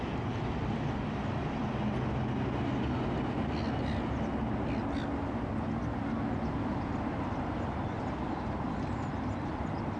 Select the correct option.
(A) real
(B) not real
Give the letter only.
A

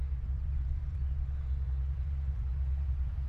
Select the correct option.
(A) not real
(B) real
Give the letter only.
A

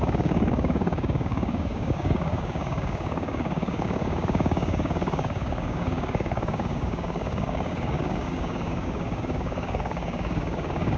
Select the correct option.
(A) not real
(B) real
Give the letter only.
A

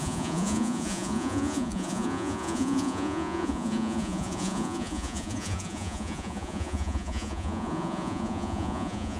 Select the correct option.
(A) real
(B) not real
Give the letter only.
B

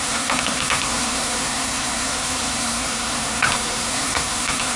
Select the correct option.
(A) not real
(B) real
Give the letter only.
A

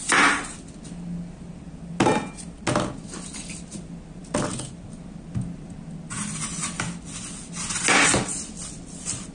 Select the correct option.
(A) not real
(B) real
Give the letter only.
B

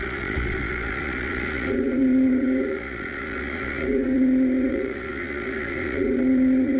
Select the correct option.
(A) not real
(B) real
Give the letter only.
A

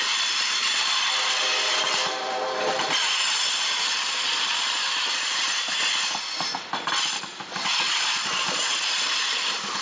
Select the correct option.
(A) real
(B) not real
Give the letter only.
B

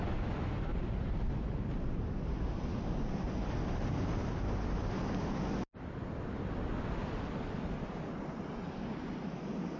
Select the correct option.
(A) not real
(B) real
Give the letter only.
B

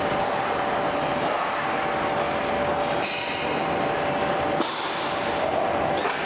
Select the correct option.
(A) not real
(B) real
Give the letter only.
B